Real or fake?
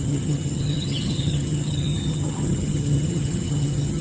fake